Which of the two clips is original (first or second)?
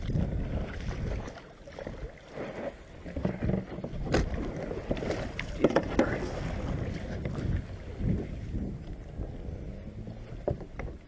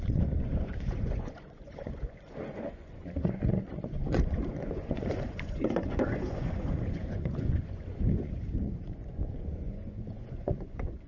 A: first